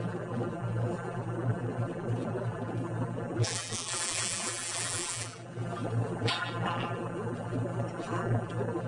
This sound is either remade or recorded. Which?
remade